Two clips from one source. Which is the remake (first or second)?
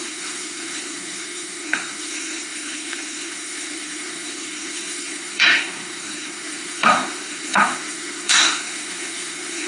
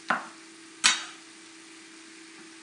first